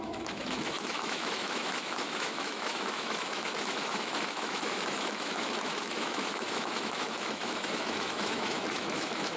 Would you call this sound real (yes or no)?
no